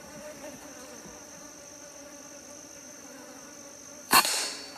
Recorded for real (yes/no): no